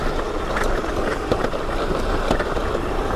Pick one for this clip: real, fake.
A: real